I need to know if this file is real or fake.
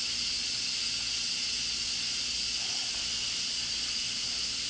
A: real